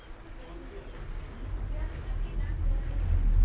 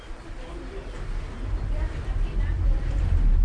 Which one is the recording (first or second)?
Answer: first